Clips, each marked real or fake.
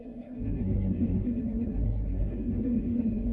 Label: fake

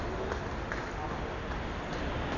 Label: real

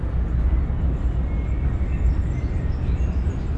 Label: real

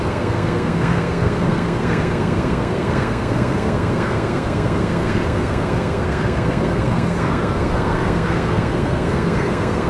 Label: fake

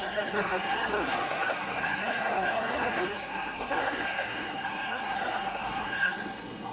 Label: fake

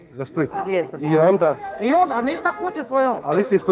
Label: fake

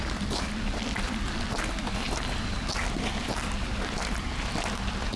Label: real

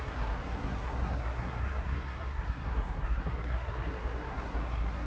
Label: fake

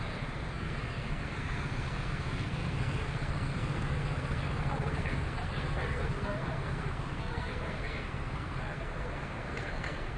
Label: fake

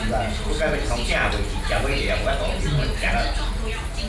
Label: real